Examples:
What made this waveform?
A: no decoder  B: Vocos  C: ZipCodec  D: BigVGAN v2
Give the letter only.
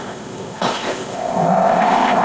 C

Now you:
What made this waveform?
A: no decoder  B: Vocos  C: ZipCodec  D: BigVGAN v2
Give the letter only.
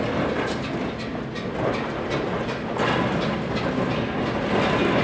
A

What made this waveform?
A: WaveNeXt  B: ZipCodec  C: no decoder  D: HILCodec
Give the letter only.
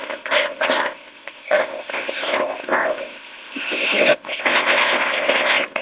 B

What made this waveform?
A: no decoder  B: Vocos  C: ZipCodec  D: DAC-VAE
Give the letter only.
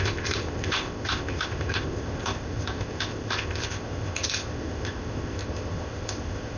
C